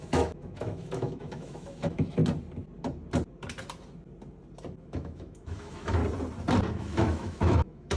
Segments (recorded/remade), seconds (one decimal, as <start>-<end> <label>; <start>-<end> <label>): 0.0-2.2 remade; 2.2-4.8 recorded; 4.8-6.0 remade; 6.0-6.7 recorded; 6.7-8.0 remade

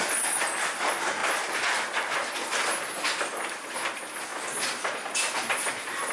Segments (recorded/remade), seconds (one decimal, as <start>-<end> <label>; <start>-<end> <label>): 0.0-6.1 recorded

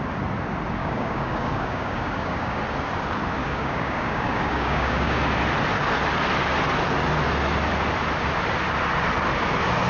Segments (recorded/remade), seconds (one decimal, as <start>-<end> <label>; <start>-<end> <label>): 0.0-0.8 recorded; 0.8-2.6 remade; 2.6-3.4 recorded; 3.4-5.2 remade; 5.2-9.9 recorded